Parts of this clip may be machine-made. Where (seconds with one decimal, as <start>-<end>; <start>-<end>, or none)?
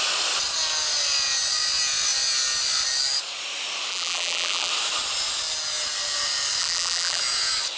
3.9-4.7; 6.6-7.2